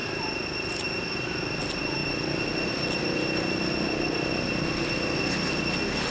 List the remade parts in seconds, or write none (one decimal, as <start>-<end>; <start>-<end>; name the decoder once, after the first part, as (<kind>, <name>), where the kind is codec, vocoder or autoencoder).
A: none